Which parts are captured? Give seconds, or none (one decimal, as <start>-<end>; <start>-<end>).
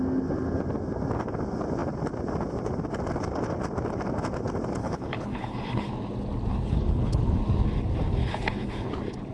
0.0-4.8; 5.9-6.5; 7.2-8.2; 8.9-9.3